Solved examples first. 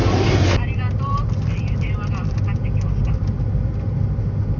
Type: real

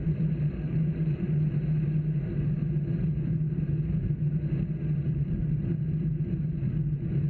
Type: fake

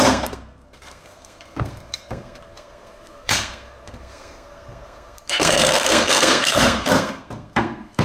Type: fake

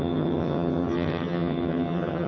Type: fake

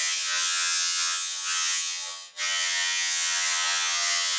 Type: fake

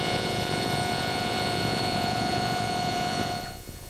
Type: fake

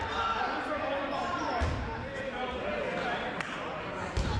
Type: real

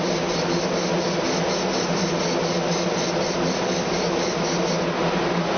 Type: real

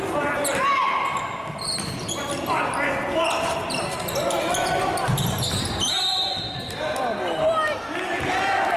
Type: real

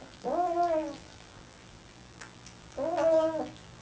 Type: fake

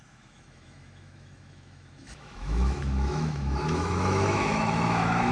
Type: fake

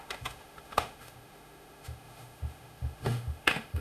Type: fake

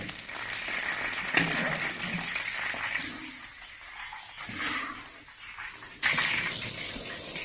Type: real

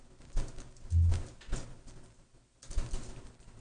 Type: real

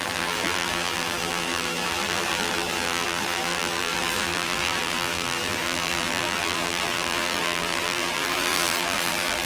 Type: fake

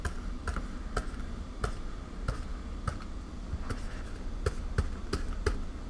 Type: real